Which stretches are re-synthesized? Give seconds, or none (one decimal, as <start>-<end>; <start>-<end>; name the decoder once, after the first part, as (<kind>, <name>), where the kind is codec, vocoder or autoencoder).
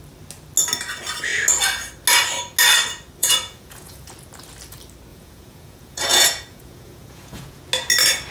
3.2-4.1 (vocoder, Vocos); 5.1-7.6